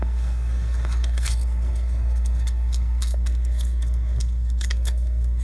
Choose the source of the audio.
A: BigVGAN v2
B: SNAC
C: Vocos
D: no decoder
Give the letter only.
B